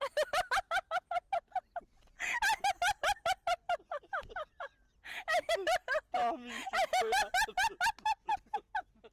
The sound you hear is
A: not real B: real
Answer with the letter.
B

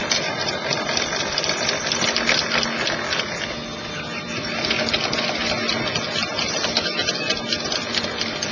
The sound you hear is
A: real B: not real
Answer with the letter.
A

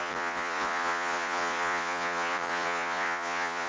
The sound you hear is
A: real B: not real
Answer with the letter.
B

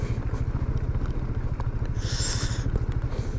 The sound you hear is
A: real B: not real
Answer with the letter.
A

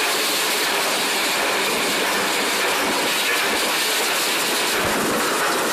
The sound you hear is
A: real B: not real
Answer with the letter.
A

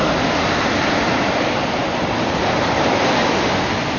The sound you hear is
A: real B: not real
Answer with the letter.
A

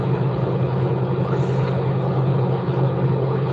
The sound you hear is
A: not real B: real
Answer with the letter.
A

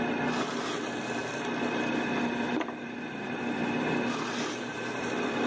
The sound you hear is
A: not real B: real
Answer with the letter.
A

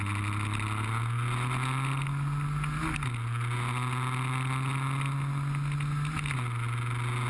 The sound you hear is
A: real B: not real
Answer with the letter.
A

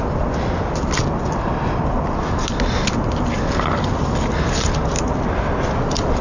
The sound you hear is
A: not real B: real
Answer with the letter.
B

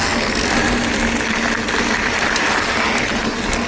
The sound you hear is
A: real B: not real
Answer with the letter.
A